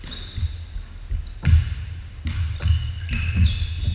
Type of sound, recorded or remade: recorded